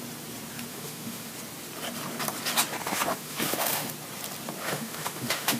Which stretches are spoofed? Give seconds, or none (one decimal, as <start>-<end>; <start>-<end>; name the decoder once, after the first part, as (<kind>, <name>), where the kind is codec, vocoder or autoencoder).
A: 0.7-1.3 (autoencoder, DAC-VAE); 2.8-3.9; 4.6-5.6